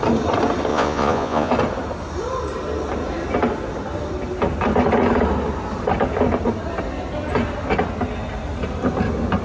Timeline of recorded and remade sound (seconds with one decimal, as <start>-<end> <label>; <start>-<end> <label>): 0.0-0.7 recorded; 0.7-1.5 remade; 1.5-9.4 recorded